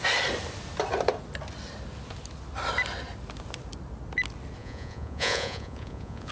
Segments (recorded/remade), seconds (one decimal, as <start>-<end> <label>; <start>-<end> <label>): 0.0-4.6 recorded; 4.6-6.3 remade